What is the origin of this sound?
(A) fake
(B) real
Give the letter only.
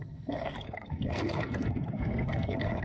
A